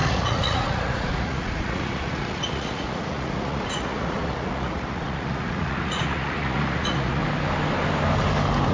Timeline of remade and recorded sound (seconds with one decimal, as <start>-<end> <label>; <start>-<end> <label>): 0.0-7.2 remade; 7.2-8.7 recorded